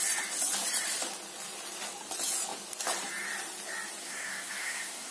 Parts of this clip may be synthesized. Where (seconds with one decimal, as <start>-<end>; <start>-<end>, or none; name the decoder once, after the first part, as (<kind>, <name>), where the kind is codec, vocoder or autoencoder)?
4.0-5.1 (codec, SNAC)